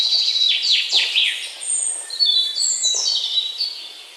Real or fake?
real